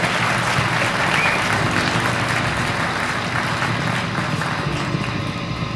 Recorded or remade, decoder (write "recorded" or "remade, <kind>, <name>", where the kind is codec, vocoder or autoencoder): recorded